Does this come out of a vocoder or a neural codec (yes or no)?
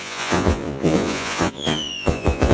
yes